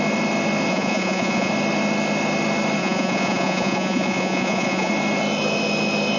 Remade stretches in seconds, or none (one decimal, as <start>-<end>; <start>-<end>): 0.7-1.5; 2.8-4.9